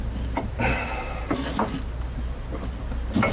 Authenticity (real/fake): real